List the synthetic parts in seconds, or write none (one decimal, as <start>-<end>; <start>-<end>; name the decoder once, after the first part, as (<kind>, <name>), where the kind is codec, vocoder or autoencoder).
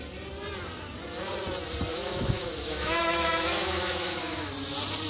1.9-4.5 (autoencoder, DAC-VAE)